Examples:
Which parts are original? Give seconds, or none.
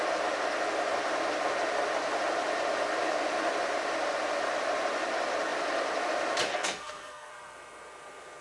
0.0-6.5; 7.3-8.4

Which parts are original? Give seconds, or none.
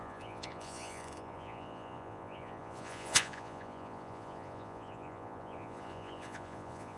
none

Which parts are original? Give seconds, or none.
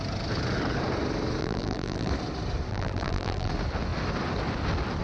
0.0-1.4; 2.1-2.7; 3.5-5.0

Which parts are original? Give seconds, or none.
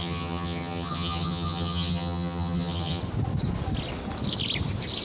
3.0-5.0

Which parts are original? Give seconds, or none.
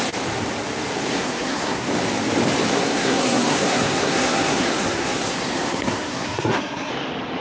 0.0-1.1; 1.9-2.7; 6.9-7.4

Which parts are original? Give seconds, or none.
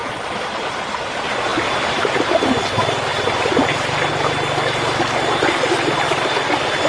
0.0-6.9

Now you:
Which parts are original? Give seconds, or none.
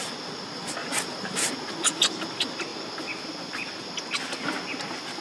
0.0-0.8; 1.5-5.2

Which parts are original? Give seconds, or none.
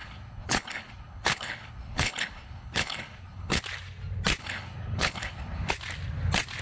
3.6-4.4; 5.7-6.6